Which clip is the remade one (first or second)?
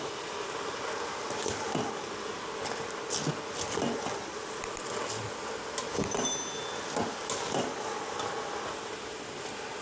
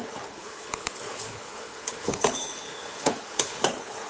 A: second